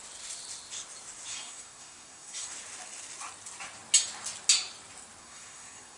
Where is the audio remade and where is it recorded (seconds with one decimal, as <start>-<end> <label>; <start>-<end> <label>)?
0.0-1.3 recorded; 1.3-2.5 remade; 2.5-5.2 recorded; 5.2-6.0 remade